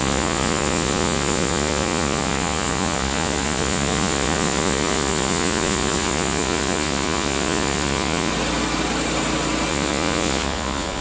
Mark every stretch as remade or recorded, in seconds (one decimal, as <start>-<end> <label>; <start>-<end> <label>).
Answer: 0.0-8.3 remade; 8.3-9.7 recorded; 9.7-11.0 remade